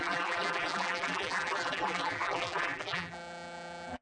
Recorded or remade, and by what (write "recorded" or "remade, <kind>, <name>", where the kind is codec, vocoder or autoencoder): remade, vocoder, BigVGAN v2